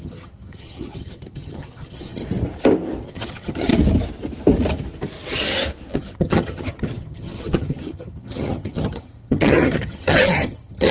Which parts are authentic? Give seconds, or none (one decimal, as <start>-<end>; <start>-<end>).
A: 2.2-3.0; 3.7-5.9